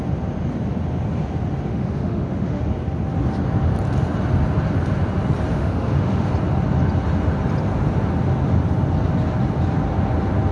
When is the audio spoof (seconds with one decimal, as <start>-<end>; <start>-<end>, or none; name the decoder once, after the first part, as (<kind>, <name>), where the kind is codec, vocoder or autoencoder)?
1.7-2.6 (autoencoder, DAC-VAE); 5.5-6.3